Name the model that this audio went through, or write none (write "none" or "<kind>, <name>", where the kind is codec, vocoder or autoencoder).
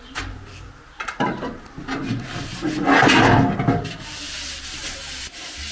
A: none